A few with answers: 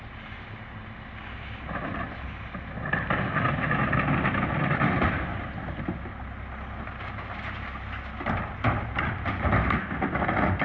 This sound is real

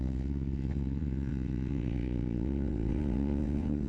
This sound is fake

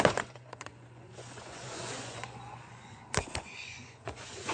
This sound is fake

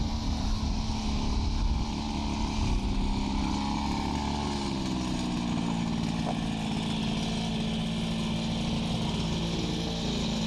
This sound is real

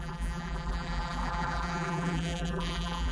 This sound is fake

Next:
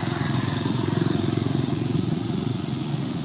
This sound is fake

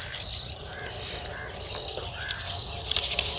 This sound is real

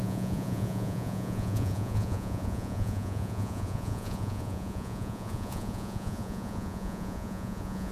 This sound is fake